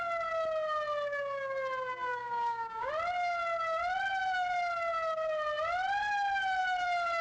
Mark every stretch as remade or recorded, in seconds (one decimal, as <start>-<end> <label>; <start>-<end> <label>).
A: 0.0-2.2 recorded; 2.2-2.9 remade; 2.9-7.2 recorded